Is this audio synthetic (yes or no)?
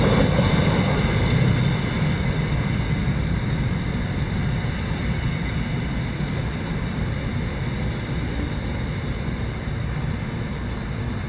no